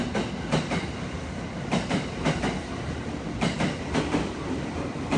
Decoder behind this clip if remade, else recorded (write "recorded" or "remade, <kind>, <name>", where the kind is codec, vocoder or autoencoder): recorded